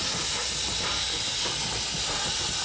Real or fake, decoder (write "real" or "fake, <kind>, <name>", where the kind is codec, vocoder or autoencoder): real